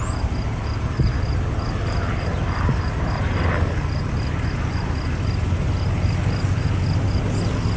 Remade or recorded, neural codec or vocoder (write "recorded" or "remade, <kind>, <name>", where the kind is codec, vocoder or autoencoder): recorded